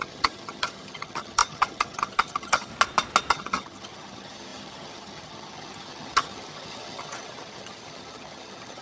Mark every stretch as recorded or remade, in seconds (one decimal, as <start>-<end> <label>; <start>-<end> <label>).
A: 0.0-2.7 remade; 2.7-3.3 recorded; 3.3-8.8 remade